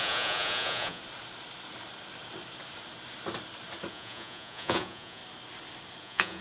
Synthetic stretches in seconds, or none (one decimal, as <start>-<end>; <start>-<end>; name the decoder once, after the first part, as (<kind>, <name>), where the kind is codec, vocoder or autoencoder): 0.0-1.0 (vocoder, Vocos); 3.9-5.2; 6.0-6.4